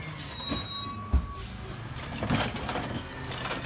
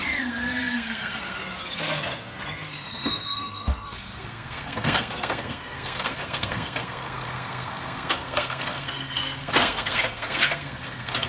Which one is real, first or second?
first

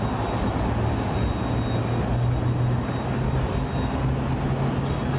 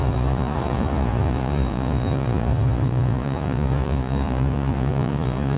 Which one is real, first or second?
first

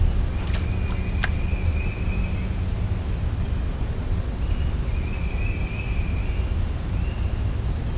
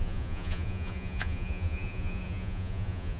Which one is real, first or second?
first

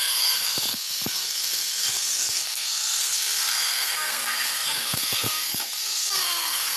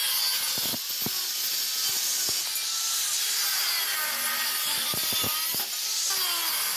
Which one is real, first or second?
second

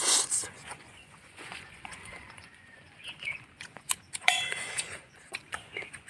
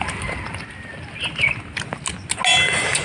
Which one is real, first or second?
second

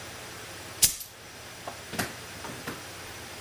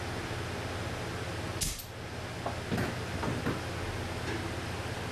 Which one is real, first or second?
second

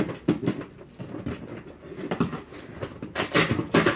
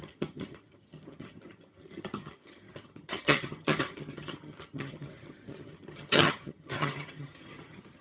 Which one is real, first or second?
first